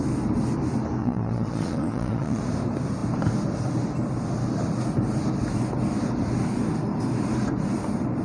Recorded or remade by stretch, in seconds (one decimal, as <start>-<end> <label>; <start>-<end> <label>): 0.0-1.0 recorded; 1.0-2.4 remade; 2.4-8.2 recorded